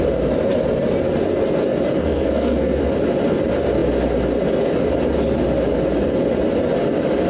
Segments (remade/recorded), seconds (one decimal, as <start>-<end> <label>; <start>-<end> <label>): 0.0-2.0 recorded; 2.0-2.8 remade; 2.8-7.3 recorded